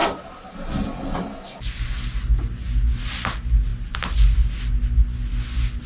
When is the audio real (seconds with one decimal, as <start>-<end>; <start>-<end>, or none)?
0.0-3.7; 4.5-5.9